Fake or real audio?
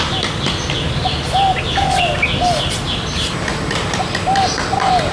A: real